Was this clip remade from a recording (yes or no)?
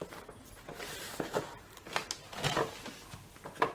no